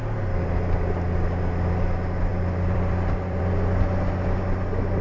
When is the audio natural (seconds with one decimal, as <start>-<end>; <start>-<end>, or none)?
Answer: 0.0-2.3; 3.4-5.0

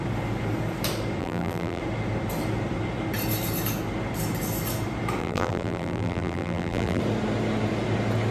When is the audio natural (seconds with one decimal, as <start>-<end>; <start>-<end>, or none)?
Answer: 0.0-1.2; 1.8-5.2; 7.0-8.3

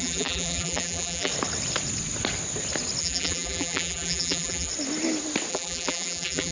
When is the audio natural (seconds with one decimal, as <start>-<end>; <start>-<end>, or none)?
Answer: 1.3-3.0; 4.7-5.5

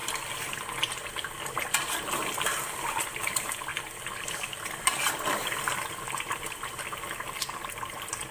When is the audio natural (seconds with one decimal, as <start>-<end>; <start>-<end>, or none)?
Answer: 0.0-1.1

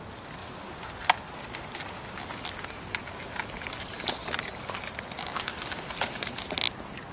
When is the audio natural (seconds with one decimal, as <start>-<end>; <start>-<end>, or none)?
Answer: 0.0-7.1